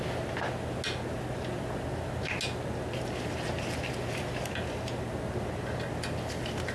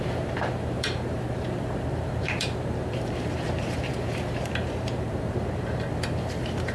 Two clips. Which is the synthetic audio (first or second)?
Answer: second